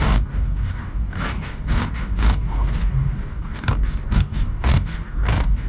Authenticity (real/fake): fake